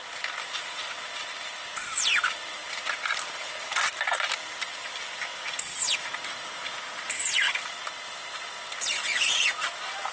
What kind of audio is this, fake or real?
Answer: real